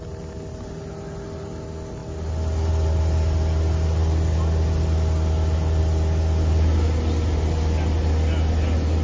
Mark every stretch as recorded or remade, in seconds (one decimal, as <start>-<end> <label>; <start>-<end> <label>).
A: 0.0-9.0 recorded